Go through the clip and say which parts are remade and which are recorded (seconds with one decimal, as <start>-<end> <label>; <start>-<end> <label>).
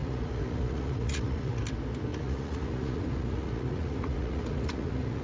0.0-1.6 remade; 1.6-2.1 recorded; 2.1-5.2 remade